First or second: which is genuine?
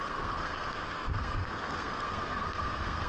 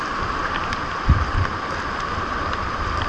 second